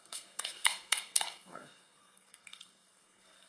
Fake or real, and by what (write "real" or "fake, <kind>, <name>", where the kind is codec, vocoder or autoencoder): fake, codec, SNAC